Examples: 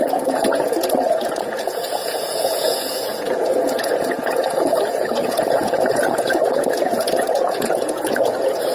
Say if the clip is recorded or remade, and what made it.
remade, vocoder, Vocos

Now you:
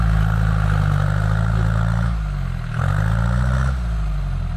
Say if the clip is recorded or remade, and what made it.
recorded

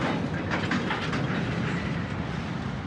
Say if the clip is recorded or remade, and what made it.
recorded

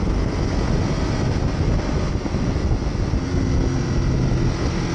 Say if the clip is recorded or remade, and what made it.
recorded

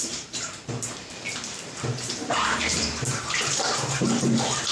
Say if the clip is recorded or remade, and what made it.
remade, vocoder, BigVGAN v2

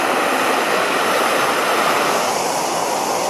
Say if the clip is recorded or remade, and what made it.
remade, vocoder, BigVGAN v2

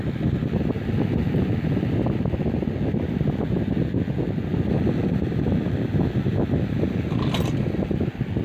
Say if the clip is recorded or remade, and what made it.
recorded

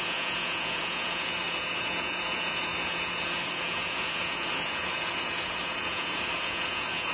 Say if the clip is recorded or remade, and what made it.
remade, vocoder, Vocos